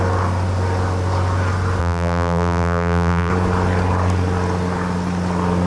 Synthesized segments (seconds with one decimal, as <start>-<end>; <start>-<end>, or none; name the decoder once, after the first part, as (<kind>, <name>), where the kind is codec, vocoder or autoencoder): 1.8-3.3 (vocoder, BigVGAN v2)